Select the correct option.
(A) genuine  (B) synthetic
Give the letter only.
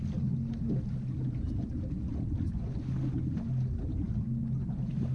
A